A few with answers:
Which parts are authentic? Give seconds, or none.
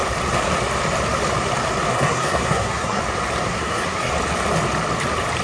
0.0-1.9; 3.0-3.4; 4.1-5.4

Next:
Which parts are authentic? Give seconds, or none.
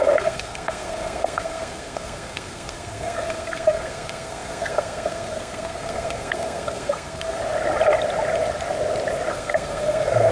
7.4-9.3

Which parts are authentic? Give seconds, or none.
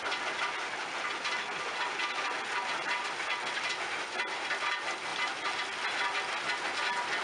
0.0-7.2